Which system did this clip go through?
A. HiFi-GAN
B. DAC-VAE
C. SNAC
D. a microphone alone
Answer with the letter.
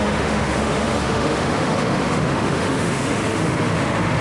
B